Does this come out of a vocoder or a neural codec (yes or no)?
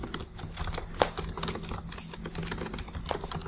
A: no